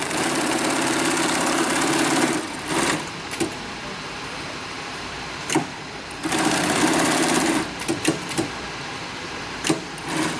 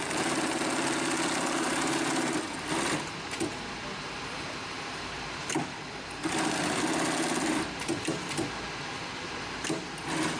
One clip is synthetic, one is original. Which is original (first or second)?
second